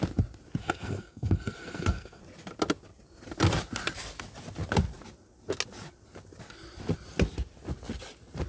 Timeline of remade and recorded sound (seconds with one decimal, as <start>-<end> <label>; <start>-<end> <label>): 0.0-0.6 recorded; 0.6-2.2 remade; 2.2-8.5 recorded